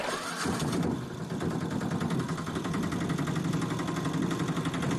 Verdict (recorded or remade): recorded